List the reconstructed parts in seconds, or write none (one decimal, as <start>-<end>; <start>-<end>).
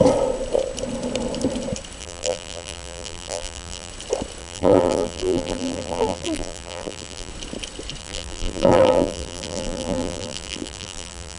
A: 2.0-3.9; 4.4-7.3; 8.0-11.4